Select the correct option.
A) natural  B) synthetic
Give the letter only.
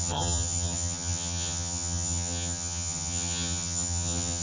B